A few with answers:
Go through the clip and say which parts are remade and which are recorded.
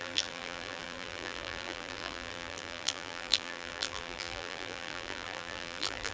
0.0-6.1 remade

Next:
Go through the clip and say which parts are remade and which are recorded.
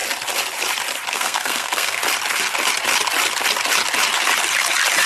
0.0-1.1 recorded; 1.1-2.0 remade; 2.0-5.1 recorded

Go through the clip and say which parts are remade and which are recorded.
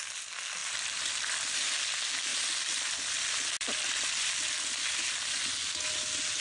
0.0-0.6 recorded; 0.6-1.7 remade; 1.7-2.3 recorded; 2.3-5.0 remade; 5.0-6.4 recorded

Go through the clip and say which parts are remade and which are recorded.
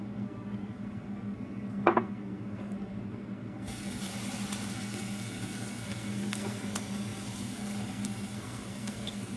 0.0-4.1 remade; 4.1-4.7 recorded; 4.7-9.4 remade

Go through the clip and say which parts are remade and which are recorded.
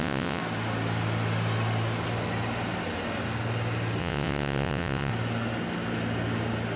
0.0-0.4 remade; 0.4-4.0 recorded; 4.0-5.1 remade; 5.1-6.8 recorded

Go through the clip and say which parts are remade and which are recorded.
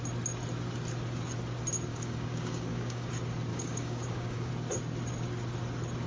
0.0-1.9 recorded; 1.9-3.1 remade; 3.1-3.5 recorded; 3.5-4.5 remade; 4.5-6.1 recorded